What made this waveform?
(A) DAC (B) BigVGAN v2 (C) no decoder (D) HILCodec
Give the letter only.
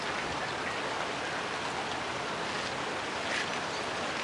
C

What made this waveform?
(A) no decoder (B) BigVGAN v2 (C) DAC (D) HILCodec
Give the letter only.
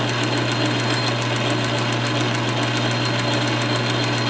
A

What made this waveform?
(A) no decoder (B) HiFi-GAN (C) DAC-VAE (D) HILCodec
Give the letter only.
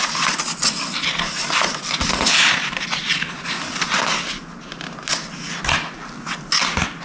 A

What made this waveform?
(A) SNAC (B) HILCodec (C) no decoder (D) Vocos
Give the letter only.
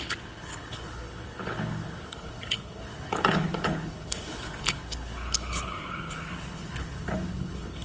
B